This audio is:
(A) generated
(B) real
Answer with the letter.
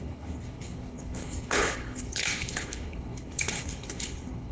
A